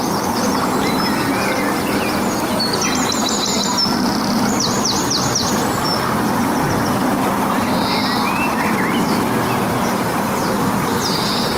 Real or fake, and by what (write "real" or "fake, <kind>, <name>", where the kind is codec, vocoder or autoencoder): real